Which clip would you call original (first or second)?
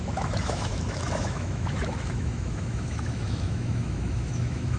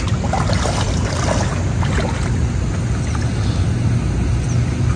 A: second